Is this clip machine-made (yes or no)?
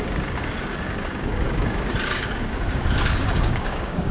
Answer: yes